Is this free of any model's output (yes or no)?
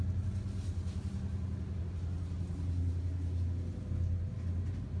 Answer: yes